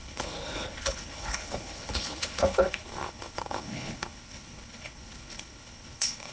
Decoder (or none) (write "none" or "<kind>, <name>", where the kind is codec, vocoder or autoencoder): codec, HILCodec